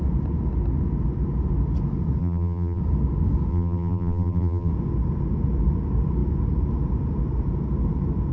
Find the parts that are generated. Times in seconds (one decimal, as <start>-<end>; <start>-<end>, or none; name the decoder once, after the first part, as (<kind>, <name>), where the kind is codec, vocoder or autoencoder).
2.2-2.8 (vocoder, BigVGAN v2); 3.5-4.7